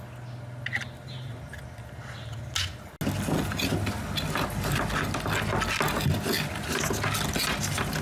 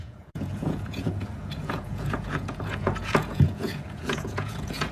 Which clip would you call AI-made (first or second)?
second